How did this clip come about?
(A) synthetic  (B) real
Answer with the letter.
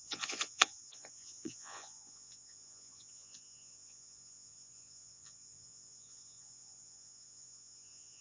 A